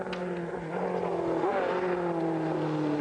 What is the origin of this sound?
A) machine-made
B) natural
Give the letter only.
B